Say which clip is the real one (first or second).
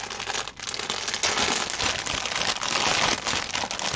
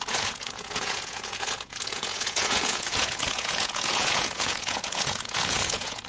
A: first